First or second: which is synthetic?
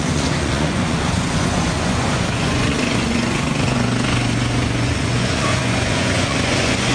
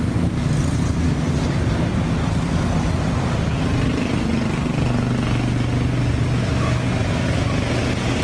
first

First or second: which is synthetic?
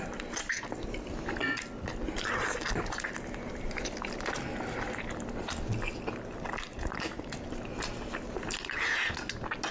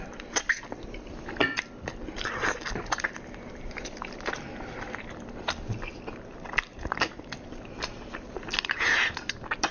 second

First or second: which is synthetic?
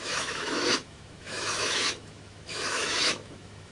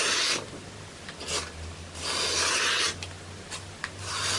first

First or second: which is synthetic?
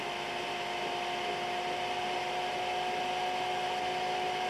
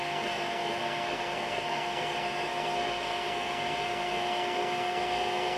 second